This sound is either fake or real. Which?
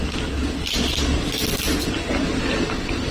real